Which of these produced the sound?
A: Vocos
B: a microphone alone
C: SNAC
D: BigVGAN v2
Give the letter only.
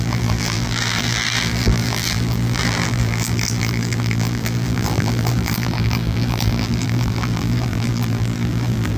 D